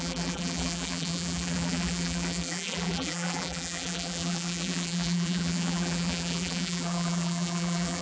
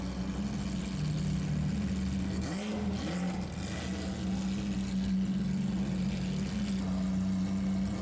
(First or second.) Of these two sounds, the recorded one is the second